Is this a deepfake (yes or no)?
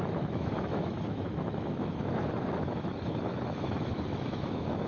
yes